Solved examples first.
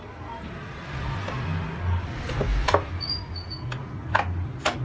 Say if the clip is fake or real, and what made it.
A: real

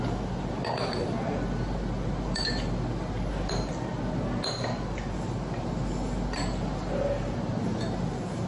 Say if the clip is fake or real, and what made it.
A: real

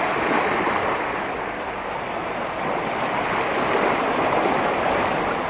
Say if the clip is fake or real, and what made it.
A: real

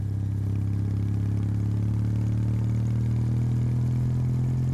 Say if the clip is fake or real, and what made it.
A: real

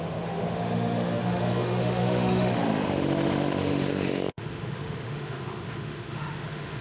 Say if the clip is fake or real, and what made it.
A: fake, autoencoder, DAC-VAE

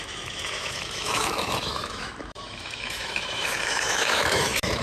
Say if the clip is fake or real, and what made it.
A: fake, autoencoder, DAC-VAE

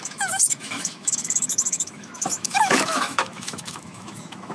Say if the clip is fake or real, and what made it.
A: fake, autoencoder, DAC-VAE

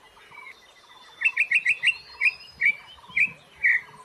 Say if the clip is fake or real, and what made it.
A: real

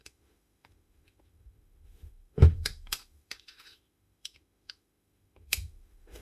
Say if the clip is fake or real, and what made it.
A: fake, autoencoder, DAC-VAE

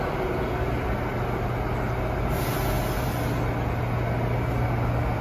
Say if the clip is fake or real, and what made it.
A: real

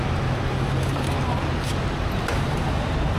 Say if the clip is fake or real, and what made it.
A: real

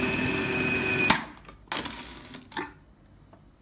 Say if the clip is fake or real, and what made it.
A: real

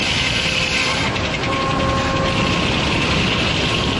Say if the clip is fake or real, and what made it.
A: real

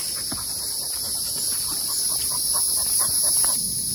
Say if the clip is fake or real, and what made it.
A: real